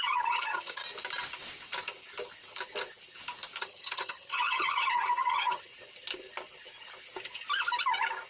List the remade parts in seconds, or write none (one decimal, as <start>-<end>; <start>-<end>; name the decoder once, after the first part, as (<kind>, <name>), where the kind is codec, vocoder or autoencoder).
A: 0.0-0.8 (vocoder, HiFi-GAN); 3.6-5.7